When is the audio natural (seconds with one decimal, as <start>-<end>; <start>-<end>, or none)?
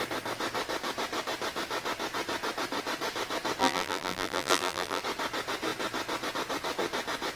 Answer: 0.0-3.6; 5.0-7.4